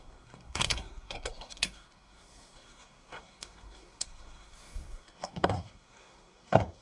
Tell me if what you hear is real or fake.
fake